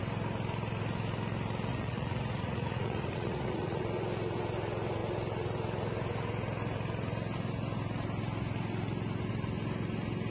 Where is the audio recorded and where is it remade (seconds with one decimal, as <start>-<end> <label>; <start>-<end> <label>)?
0.0-1.7 recorded; 1.7-3.8 remade; 3.8-10.3 recorded